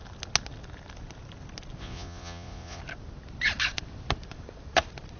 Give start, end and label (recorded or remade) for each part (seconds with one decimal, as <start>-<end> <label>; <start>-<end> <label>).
0.0-1.8 recorded; 1.8-2.8 remade; 2.8-5.2 recorded